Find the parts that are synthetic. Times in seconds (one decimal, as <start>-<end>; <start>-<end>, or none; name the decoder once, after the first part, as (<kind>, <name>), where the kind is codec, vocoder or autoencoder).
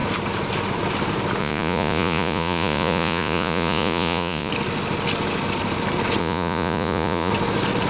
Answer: 1.4-4.5 (vocoder, Vocos); 6.2-7.3